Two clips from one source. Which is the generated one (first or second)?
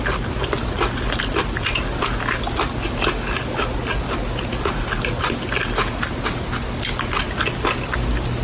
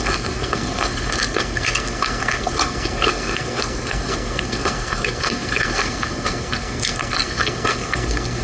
second